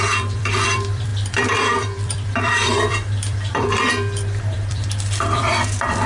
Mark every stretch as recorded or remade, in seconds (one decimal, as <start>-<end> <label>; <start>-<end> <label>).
0.0-6.1 remade